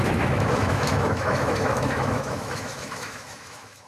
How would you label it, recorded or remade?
remade